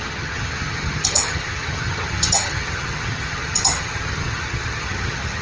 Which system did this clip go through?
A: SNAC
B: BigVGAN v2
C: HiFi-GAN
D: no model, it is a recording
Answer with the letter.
C